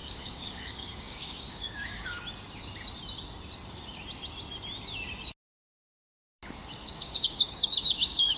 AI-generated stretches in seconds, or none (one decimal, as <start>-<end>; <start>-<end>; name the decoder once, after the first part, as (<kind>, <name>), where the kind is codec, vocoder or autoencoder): 0.0-2.2 (codec, DAC); 6.8-8.4

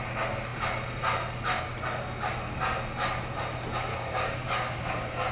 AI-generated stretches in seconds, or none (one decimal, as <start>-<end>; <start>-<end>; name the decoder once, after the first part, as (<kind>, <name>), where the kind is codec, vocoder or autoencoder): 3.9-5.3 (codec, DAC)

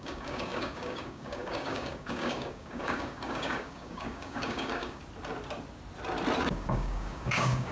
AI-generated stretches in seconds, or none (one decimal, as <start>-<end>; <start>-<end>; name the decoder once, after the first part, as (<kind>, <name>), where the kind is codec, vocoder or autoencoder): 0.0-5.0 (codec, DAC); 6.4-7.7

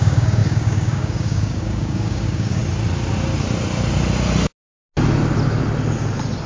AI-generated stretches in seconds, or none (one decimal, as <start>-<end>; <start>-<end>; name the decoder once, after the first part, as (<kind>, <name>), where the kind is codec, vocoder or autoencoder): 0.0-2.6 (codec, DAC)

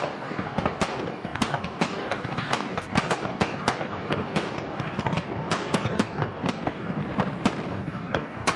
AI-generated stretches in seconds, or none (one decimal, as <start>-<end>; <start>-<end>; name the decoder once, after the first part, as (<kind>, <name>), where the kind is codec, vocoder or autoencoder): 0.0-7.0 (codec, DAC); 7.7-8.6

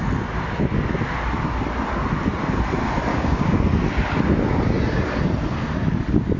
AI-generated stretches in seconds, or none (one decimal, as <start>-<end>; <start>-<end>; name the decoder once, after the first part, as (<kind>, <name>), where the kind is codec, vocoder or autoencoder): 3.1-3.6 (codec, DAC)

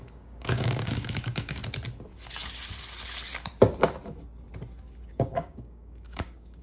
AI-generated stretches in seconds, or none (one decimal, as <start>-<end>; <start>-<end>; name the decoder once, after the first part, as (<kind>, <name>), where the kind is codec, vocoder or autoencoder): 0.0-1.6 (codec, DAC); 5.1-6.6

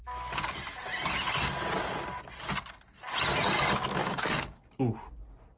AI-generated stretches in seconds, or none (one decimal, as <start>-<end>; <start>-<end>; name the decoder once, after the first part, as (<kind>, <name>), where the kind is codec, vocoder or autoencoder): 4.0-4.8 (codec, DAC)